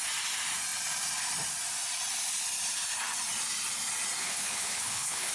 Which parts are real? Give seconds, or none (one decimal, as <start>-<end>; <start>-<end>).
0.0-4.2